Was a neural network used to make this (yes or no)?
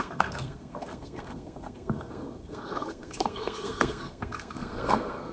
yes